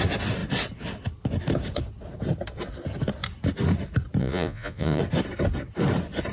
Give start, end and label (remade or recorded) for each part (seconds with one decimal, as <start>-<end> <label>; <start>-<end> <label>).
0.0-4.2 recorded; 4.2-5.0 remade; 5.0-6.3 recorded